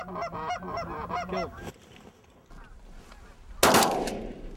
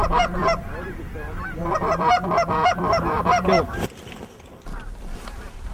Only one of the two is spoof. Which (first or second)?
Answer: second